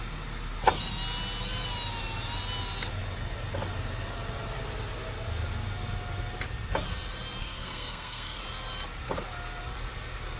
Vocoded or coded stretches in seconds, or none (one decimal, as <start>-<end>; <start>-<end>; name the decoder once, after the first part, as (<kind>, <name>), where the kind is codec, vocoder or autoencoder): 7.4-8.4 (codec, SNAC)

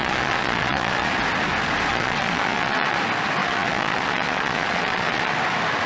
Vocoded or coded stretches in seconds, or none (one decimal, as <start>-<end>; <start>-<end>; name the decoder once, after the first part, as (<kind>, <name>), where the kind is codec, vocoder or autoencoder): 0.0-1.1 (vocoder, Vocos); 1.9-3.0; 3.4-5.3

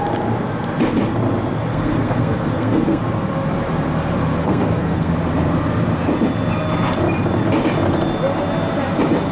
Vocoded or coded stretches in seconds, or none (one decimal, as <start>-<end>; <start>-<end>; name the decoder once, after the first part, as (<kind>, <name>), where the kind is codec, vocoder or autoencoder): 1.7-3.0 (codec, SNAC); 4.4-5.1

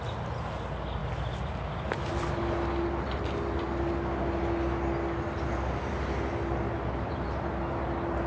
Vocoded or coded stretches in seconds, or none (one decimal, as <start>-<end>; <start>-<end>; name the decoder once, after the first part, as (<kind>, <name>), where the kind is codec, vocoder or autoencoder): none

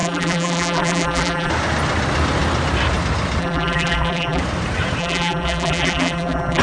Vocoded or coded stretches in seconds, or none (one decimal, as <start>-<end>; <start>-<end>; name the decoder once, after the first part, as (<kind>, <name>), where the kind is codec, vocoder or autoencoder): 0.0-1.5 (vocoder, BigVGAN v2); 3.4-4.4; 5.0-6.6

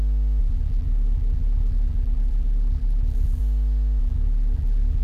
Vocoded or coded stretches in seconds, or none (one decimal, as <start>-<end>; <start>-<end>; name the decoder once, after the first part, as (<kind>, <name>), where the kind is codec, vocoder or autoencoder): 0.4-3.4 (vocoder, BigVGAN v2); 4.0-5.0

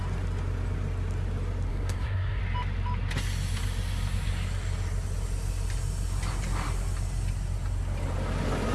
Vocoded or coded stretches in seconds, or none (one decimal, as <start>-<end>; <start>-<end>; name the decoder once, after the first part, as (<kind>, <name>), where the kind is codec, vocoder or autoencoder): 1.7-2.4 (codec, SNAC)

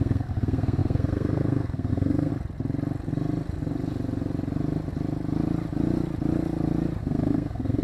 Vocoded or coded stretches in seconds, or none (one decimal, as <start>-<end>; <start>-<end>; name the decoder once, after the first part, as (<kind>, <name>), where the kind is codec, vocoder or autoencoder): 0.0-2.3 (codec, SNAC); 7.0-7.8